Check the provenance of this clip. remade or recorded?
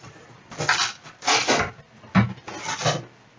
recorded